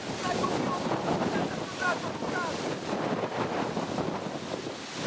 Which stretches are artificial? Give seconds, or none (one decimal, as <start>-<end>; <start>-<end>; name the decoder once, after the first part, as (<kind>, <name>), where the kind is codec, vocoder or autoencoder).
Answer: none